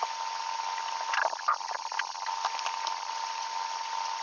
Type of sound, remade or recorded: recorded